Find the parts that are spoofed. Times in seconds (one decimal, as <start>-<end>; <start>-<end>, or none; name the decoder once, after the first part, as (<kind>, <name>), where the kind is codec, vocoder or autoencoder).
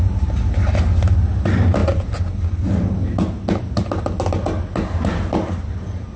none